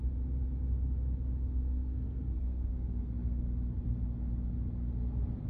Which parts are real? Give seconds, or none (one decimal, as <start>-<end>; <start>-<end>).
0.0-1.6; 3.4-5.5